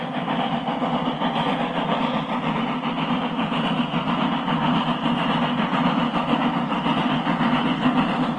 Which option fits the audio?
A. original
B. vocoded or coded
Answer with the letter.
A